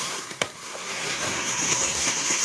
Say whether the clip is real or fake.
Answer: fake